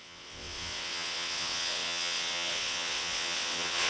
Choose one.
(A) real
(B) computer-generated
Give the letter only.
B